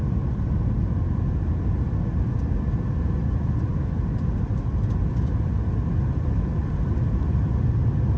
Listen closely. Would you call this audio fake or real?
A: fake